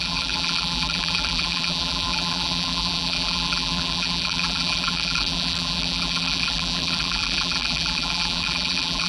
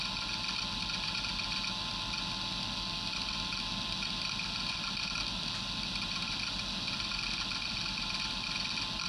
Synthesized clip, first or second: first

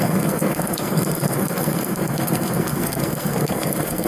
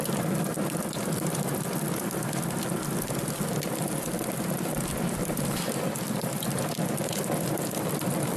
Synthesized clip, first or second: first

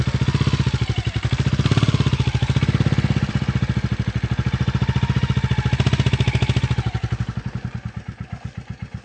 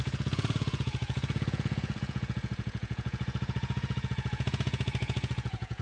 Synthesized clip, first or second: second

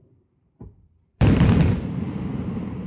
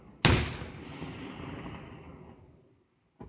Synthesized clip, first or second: first